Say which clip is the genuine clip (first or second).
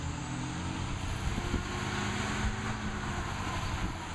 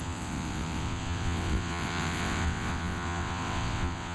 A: first